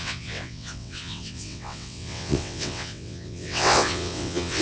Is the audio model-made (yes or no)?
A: yes